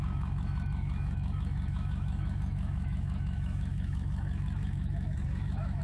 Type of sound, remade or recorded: remade